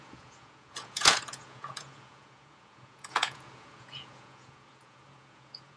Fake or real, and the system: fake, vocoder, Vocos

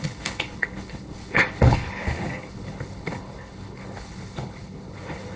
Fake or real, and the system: fake, codec, HILCodec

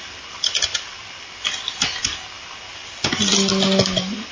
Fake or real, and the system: real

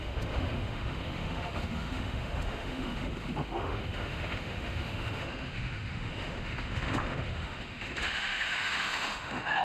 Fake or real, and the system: fake, autoencoder, DAC-VAE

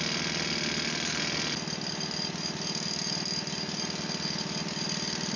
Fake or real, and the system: real